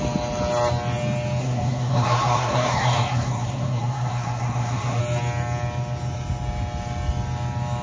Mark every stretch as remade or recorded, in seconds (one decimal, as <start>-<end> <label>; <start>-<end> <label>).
0.0-1.4 recorded; 1.4-5.0 remade; 5.0-7.8 recorded

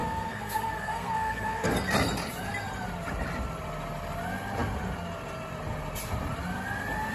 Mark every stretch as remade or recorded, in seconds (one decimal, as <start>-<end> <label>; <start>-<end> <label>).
0.0-1.7 remade; 1.7-7.1 recorded

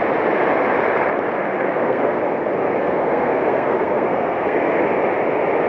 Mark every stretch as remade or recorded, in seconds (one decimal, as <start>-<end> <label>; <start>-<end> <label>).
0.0-1.3 recorded; 1.3-2.2 remade; 2.2-2.8 recorded; 2.8-4.8 remade; 4.8-5.7 recorded

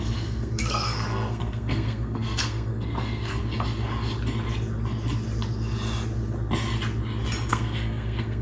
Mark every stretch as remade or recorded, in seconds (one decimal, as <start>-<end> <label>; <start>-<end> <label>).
0.0-3.4 remade; 3.4-7.5 recorded; 7.5-8.4 remade

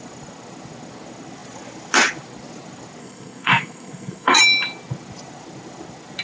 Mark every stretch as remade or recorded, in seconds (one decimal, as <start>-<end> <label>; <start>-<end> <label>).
0.0-3.0 recorded; 3.0-4.4 remade; 4.4-6.2 recorded

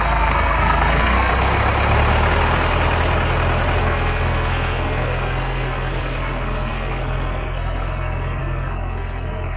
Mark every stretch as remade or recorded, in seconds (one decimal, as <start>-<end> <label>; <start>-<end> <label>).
0.0-1.3 remade; 1.3-3.8 recorded; 3.8-9.6 remade

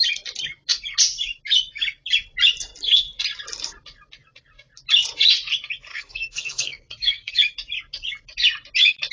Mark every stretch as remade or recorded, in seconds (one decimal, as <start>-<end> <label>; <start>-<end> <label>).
0.0-5.9 recorded; 5.9-7.3 remade; 7.3-9.1 recorded